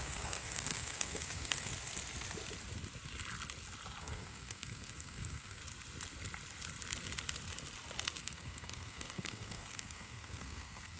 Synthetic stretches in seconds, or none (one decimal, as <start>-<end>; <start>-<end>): 0.0-1.7; 4.0-5.6; 8.2-11.0